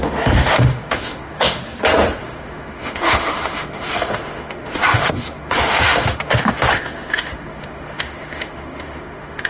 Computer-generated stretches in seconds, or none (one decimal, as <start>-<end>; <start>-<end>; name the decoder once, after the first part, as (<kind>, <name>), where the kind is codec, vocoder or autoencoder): 0.0-1.6 (autoencoder, DAC-VAE); 2.2-9.5